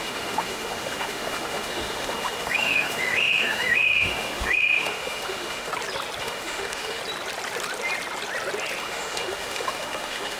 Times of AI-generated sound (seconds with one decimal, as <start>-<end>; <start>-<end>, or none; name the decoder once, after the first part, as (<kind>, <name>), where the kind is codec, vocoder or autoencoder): 0.0-5.7 (autoencoder, DAC-VAE); 6.2-7.0; 8.8-10.4